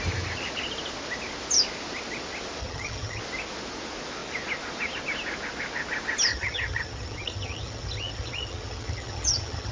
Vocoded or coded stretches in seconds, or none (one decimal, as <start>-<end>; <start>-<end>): 2.6-3.2; 6.3-9.7